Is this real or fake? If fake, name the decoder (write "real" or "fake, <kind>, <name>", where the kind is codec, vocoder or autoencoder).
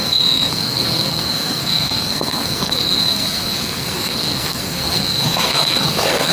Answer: fake, codec, SNAC